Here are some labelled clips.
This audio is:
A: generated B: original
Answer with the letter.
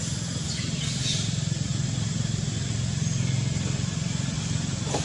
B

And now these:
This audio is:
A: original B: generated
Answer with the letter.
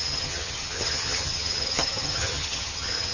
B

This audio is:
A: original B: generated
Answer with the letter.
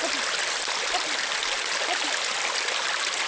A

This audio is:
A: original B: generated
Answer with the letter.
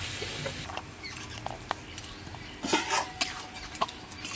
A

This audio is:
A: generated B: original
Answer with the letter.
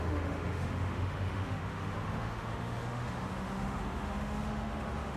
A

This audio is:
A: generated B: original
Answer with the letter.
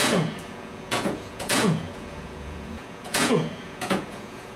A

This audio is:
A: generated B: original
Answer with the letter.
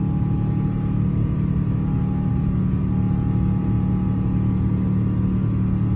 B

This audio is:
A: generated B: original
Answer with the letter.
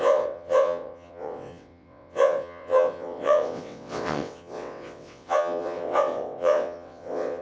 A